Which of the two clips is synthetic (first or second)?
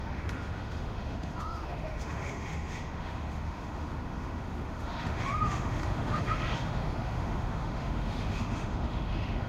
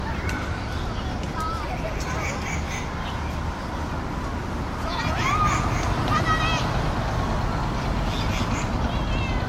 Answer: first